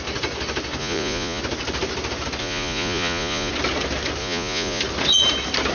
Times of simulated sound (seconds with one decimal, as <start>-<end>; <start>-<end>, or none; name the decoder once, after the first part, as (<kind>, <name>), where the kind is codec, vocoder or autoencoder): 0.8-1.4 (vocoder, Vocos); 2.4-3.5; 4.2-4.8